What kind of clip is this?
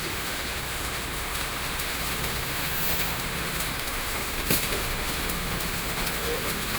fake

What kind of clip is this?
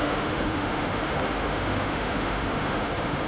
fake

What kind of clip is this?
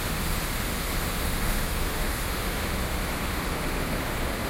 fake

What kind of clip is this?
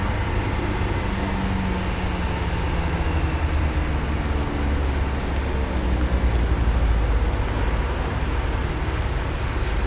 real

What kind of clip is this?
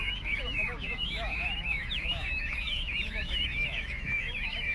fake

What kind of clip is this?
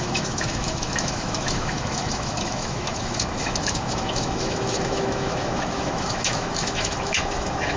fake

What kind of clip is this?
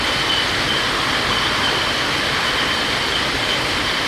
real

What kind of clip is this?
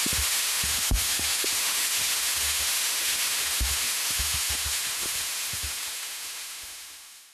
fake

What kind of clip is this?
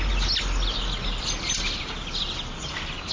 real